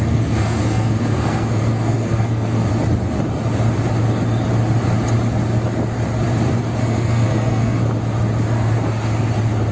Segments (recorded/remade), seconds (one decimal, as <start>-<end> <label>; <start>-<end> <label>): 0.0-2.6 remade; 2.6-6.8 recorded; 6.8-7.8 remade; 7.8-9.7 recorded